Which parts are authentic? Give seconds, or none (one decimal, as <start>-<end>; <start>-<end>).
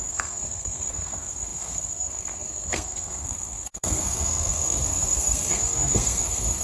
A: none